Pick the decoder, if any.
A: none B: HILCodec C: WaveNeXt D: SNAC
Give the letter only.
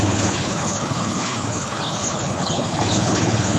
B